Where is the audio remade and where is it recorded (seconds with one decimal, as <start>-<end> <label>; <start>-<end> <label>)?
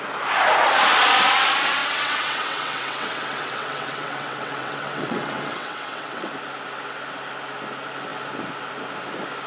0.0-1.8 recorded; 1.8-6.3 remade; 6.3-9.5 recorded